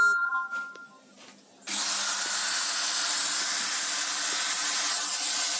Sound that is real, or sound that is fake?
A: real